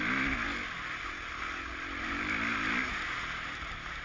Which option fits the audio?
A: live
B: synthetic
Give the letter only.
A